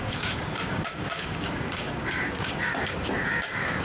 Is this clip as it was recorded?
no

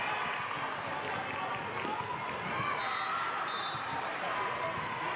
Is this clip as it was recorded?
yes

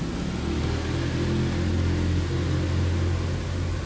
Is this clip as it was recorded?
yes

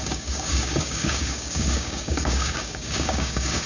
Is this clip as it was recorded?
no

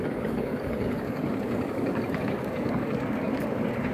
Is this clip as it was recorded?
no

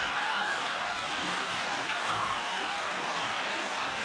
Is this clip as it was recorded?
no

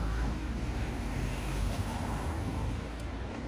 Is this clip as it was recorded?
no